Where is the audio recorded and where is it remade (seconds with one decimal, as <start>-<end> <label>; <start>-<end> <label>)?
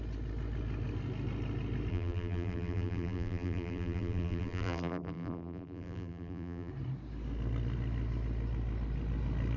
0.0-1.9 recorded; 1.9-6.7 remade; 6.7-9.6 recorded